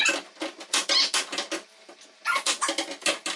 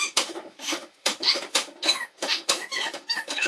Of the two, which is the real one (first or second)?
first